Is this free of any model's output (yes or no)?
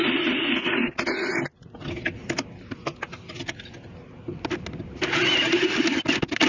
yes